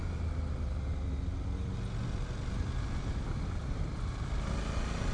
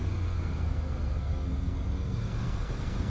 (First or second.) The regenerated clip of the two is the second